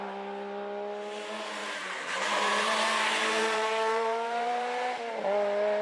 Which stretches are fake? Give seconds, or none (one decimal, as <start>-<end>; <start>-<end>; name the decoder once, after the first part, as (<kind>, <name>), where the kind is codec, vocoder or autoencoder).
1.6-5.1 (vocoder, BigVGAN v2)